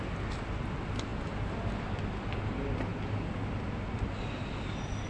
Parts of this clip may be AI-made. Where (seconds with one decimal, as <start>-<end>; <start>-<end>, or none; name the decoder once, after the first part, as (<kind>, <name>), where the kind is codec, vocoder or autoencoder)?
none